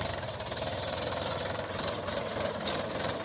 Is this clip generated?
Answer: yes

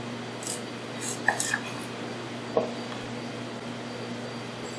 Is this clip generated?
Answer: no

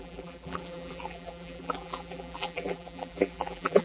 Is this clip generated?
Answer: yes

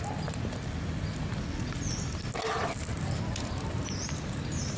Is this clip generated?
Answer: yes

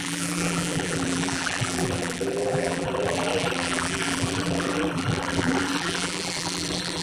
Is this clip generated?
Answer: yes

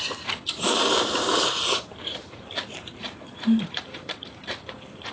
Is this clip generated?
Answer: yes